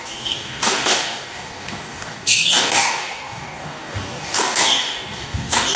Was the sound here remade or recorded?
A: remade